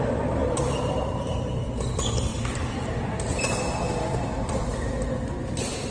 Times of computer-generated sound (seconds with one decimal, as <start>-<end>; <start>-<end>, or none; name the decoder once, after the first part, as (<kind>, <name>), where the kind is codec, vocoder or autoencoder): 0.4-1.6 (vocoder, BigVGAN v2)